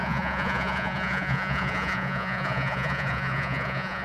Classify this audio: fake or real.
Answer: fake